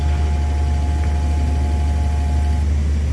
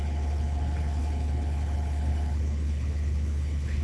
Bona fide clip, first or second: first